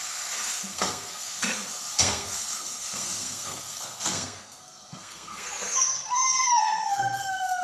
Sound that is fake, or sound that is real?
fake